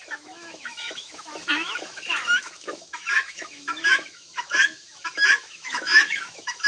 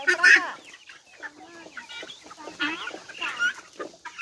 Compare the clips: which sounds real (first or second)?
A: second